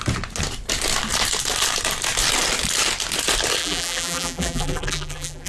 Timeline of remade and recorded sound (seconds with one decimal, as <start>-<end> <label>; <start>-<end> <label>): 0.0-3.6 recorded; 3.6-5.5 remade